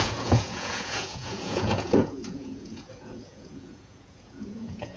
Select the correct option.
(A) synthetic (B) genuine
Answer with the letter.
A